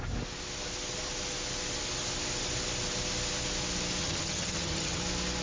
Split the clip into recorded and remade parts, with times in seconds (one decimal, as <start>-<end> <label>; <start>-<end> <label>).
0.0-4.0 recorded; 4.0-5.0 remade; 5.0-5.4 recorded